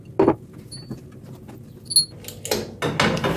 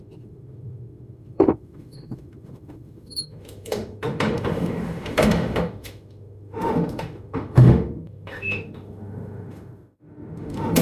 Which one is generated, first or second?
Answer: second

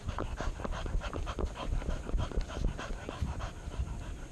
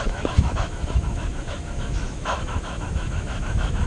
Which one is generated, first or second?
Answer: second